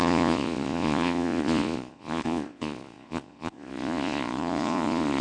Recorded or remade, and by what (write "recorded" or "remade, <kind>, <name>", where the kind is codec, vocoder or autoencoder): remade, vocoder, Vocos